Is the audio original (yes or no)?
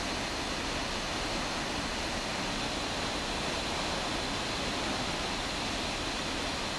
yes